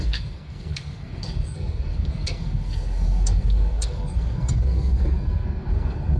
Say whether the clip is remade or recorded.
remade